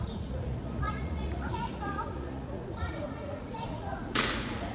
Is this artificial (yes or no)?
yes